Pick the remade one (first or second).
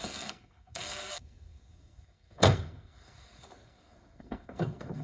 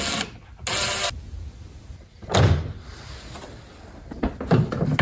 first